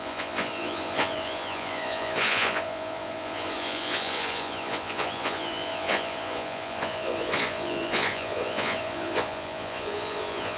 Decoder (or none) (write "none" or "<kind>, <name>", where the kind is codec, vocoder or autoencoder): vocoder, Vocos